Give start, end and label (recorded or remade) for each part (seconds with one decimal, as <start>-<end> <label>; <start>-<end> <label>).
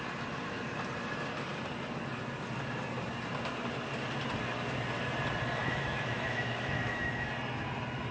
0.0-5.6 recorded; 5.6-7.3 remade; 7.3-8.1 recorded